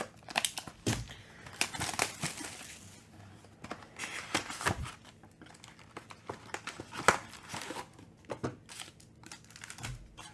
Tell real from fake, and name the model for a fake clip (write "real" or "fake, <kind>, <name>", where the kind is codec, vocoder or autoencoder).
real